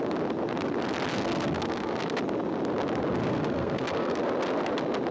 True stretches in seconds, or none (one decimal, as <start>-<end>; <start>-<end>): 0.0-1.1; 2.2-3.2; 4.2-5.1